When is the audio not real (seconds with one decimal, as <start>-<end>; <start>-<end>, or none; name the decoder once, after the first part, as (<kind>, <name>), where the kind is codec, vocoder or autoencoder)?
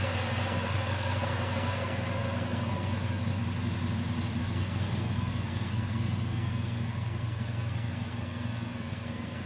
0.0-3.3 (codec, SNAC); 4.4-9.5